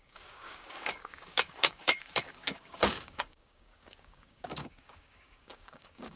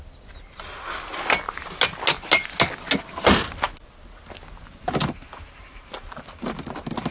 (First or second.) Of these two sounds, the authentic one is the second